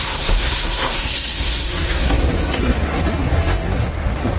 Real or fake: fake